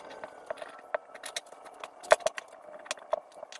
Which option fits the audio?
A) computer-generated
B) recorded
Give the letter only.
B